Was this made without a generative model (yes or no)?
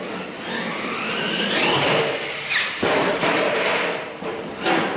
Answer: yes